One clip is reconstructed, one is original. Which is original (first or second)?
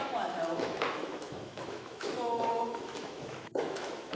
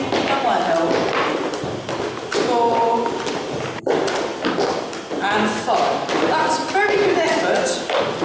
second